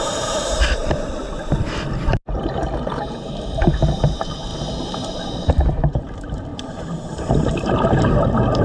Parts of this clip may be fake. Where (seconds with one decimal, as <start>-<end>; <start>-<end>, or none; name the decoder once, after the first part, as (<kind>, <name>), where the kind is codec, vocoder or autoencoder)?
0.0-0.8 (vocoder, BigVGAN v2); 3.0-4.5; 5.5-8.6